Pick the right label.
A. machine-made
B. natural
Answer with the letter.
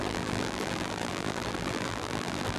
A